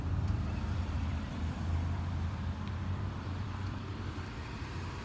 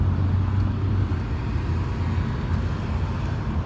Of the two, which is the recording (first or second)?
second